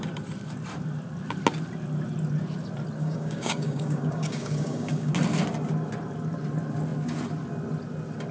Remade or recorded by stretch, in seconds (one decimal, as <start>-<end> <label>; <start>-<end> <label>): 0.0-3.0 recorded; 3.0-5.1 remade; 5.1-8.3 recorded